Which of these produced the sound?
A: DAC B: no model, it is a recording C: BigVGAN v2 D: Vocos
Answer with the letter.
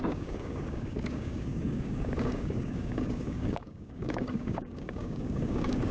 A